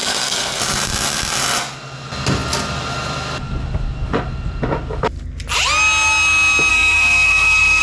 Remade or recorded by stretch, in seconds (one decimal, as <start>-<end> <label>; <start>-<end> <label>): 0.0-0.6 remade; 0.6-6.7 recorded; 6.7-7.8 remade